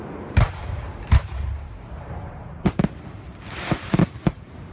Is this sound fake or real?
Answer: fake